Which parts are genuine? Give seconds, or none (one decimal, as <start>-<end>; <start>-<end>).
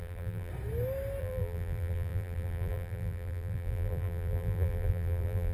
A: 0.5-1.2